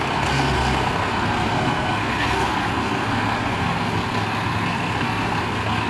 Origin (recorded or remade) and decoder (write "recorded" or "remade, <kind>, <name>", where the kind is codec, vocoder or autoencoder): remade, codec, SNAC